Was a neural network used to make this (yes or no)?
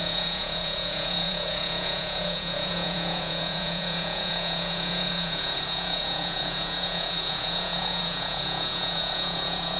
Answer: yes